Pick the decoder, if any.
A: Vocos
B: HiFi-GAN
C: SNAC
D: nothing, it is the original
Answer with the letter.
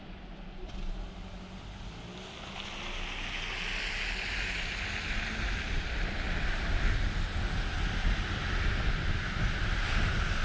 D